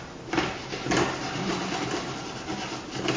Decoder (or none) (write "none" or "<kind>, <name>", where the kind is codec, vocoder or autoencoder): none